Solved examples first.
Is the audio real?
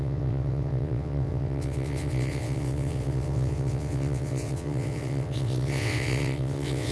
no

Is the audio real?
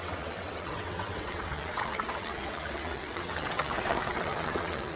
no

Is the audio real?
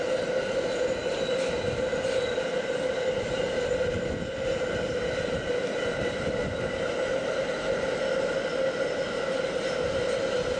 yes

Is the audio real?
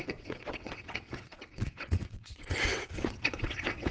no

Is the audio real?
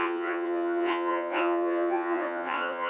no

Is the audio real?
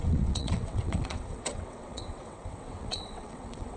no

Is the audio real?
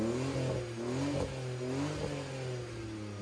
yes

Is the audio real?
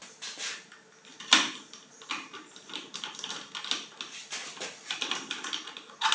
yes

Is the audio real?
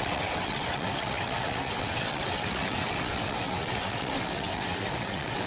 no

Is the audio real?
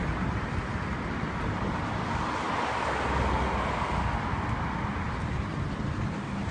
yes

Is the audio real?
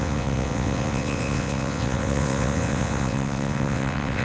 no